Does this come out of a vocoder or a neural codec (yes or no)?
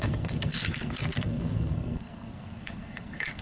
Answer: yes